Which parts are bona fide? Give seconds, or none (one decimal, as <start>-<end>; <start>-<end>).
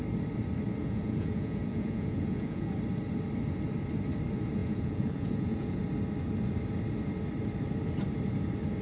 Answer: 0.0-0.8; 2.7-4.6; 5.8-8.8